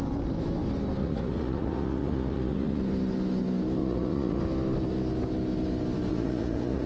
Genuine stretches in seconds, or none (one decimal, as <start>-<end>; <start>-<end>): 0.0-1.0; 2.8-3.8; 4.4-6.1